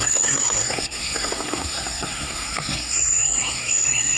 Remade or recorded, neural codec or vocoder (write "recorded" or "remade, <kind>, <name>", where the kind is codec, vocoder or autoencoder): remade, codec, SNAC